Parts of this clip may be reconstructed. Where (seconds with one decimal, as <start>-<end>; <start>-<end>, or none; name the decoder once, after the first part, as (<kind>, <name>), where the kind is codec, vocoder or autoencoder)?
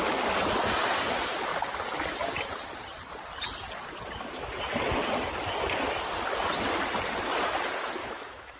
8.0-8.6 (autoencoder, DAC-VAE)